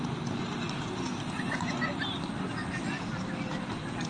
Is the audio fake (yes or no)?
no